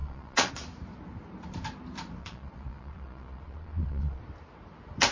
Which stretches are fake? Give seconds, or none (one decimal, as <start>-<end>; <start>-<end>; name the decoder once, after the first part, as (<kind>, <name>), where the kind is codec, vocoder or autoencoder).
0.0-0.5 (vocoder, Vocos); 2.2-4.2